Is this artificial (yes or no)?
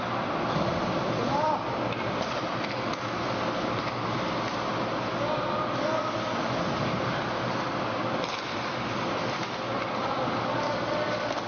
no